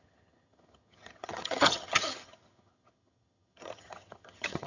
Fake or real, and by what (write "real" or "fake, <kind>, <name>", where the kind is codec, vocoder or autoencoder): fake, vocoder, HiFi-GAN